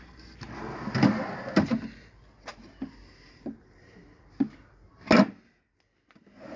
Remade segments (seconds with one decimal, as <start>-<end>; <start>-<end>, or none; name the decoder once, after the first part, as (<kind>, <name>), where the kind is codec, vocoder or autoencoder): none